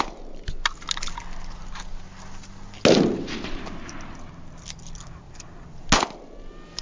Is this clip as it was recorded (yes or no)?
yes